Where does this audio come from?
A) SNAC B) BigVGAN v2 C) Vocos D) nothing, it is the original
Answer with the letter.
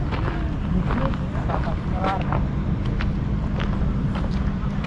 B